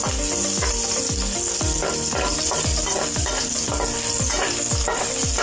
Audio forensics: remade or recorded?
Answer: recorded